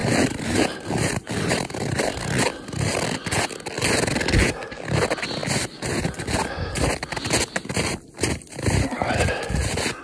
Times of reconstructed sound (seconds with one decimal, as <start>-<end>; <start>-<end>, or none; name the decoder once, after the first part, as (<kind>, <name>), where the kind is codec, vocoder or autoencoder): 0.0-2.2 (vocoder, BigVGAN v2)